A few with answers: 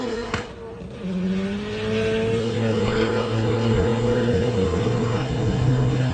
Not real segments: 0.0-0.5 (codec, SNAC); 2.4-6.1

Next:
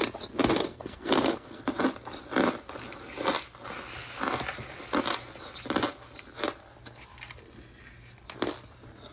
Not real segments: 0.6-1.6 (codec, SNAC)